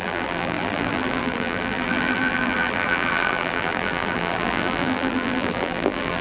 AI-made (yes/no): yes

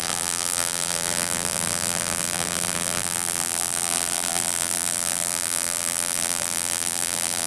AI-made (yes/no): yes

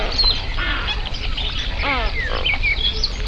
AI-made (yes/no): no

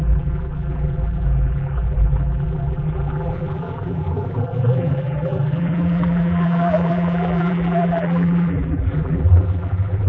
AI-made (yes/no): yes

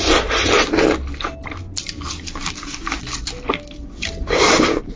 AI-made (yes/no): no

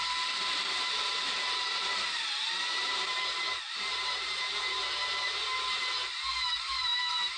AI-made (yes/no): yes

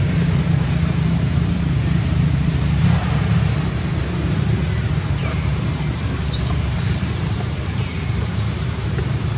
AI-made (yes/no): yes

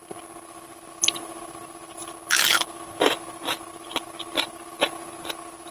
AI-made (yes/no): no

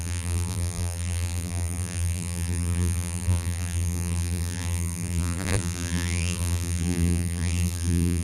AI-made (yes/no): yes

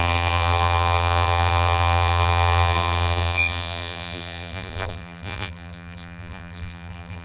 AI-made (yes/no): yes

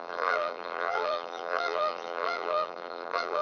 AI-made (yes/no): yes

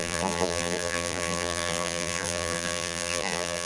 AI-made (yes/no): yes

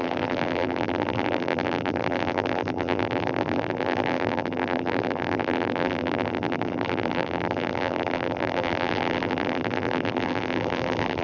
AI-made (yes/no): yes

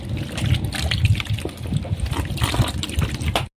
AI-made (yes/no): no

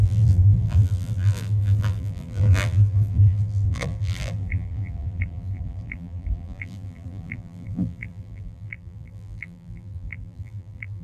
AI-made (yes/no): yes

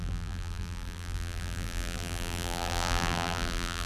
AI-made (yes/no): yes